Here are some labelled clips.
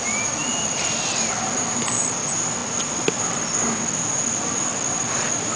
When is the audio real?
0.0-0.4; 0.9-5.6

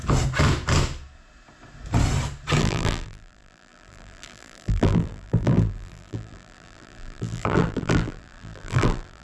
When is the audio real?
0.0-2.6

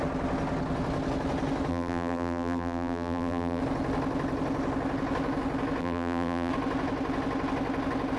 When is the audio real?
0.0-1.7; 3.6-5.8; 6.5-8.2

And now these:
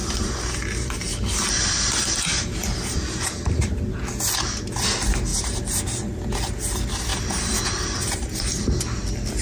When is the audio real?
3.7-5.3; 5.8-7.1; 8.7-9.4

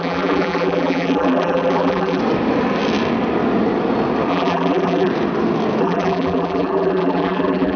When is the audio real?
2.2-4.3; 5.1-5.8

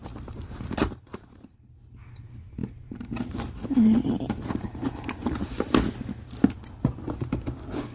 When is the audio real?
1.7-2.6; 5.8-7.9

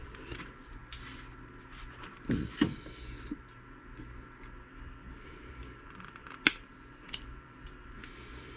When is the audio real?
0.8-4.7

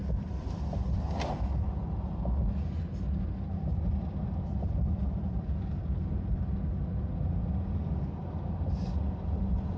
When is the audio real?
1.1-3.7; 6.1-7.8; 8.5-9.8